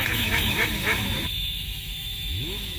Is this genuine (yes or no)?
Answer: no